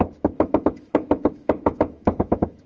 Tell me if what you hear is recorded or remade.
remade